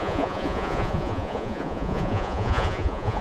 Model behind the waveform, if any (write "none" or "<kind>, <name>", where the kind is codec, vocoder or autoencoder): vocoder, Vocos